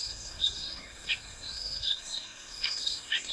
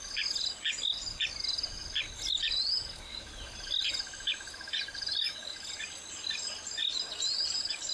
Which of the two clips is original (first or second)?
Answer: second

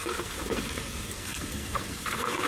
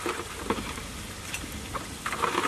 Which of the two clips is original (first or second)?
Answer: second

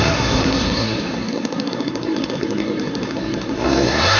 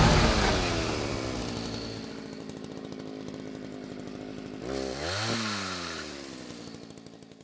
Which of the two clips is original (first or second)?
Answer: second